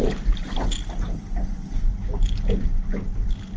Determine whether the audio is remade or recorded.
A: recorded